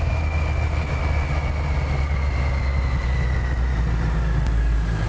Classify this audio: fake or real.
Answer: real